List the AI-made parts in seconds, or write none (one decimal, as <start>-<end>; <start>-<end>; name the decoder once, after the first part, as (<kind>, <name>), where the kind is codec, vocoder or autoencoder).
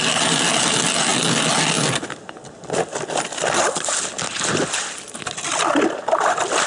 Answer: none